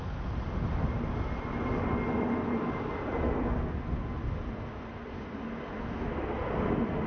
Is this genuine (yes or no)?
yes